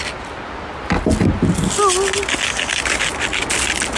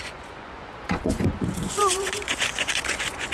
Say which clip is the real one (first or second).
first